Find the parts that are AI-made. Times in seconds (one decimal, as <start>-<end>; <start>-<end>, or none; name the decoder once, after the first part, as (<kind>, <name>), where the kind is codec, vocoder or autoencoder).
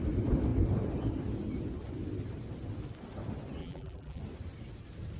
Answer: 3.6-4.2 (vocoder, BigVGAN v2)